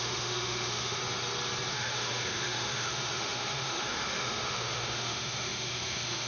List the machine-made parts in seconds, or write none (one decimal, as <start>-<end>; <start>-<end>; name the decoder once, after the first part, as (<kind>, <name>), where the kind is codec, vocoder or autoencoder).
0.0-1.0 (autoencoder, DAC-VAE); 1.7-6.3